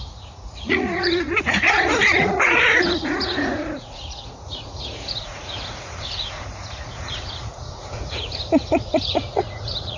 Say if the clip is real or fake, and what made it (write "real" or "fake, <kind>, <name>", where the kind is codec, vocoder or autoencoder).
fake, vocoder, Vocos